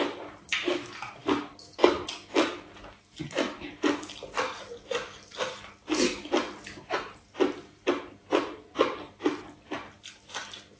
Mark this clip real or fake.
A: real